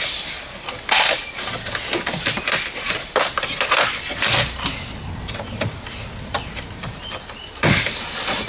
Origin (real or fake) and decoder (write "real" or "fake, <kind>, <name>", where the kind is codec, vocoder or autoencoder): real